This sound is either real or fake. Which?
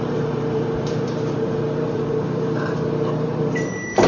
fake